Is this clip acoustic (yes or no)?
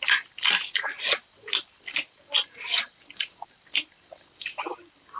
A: yes